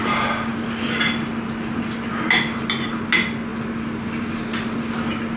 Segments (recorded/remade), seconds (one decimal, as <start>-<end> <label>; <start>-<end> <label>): 0.0-5.4 recorded